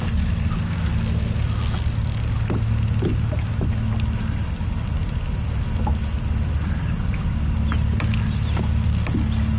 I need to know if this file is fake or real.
real